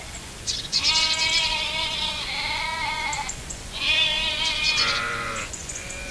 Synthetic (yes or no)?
yes